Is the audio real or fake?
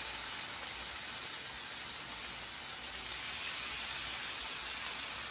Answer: real